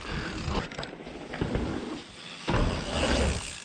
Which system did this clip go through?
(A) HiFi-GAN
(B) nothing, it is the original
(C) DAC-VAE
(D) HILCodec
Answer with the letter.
B